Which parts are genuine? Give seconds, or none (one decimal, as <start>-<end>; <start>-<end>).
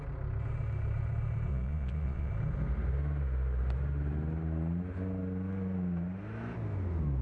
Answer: 0.0-1.5; 2.3-7.2